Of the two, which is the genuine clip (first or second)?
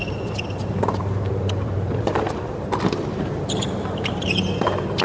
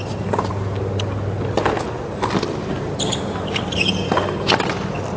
second